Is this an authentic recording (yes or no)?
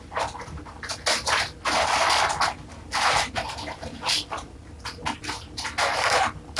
yes